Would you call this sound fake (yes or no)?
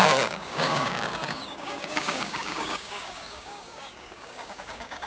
yes